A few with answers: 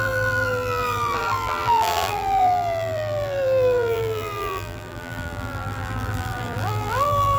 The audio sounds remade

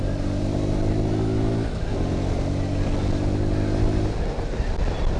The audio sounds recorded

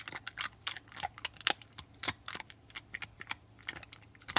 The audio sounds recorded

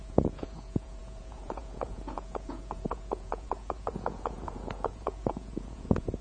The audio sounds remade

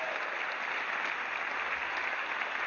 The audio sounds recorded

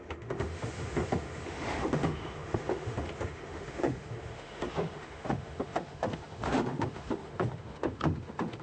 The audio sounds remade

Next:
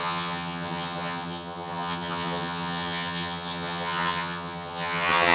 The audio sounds remade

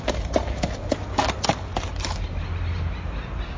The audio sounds recorded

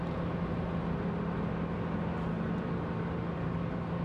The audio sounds recorded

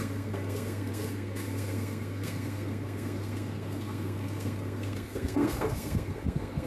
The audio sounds remade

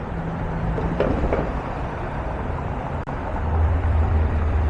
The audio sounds remade